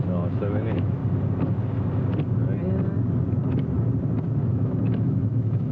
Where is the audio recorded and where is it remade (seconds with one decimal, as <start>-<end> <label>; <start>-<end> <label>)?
0.0-1.0 remade; 1.0-4.4 recorded; 4.4-5.7 remade